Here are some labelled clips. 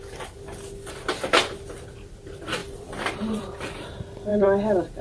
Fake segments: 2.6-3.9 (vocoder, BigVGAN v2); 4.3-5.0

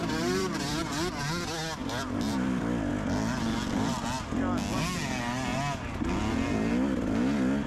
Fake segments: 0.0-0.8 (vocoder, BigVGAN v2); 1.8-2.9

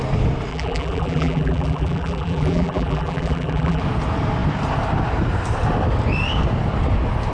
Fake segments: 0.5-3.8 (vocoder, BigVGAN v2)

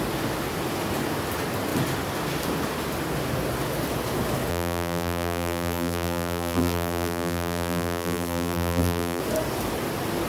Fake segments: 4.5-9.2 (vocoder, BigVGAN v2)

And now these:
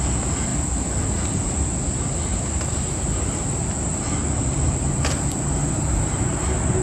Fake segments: none